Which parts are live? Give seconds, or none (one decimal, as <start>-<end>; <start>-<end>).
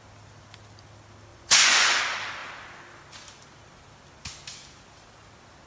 0.0-1.3; 2.0-5.7